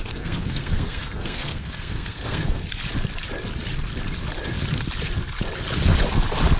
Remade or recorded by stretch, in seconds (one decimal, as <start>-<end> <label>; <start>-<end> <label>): 0.0-2.6 remade; 2.6-6.6 recorded